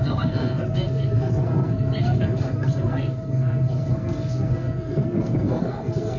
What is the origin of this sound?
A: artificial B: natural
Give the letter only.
A